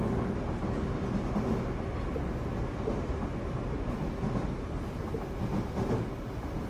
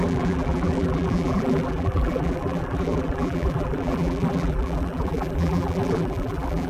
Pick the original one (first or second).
first